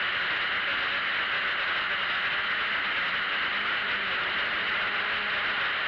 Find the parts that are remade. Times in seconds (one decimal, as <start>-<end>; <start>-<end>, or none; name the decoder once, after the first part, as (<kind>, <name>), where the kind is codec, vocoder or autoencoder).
none